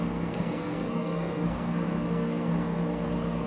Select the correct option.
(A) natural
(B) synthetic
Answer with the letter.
B